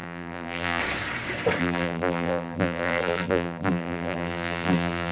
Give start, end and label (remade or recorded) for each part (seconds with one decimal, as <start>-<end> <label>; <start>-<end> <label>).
0.0-0.8 remade; 0.8-1.6 recorded; 1.6-5.1 remade